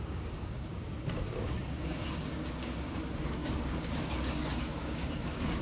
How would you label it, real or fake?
fake